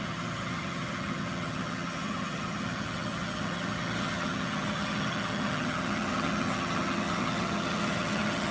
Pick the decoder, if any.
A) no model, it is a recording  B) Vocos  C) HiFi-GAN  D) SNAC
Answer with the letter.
C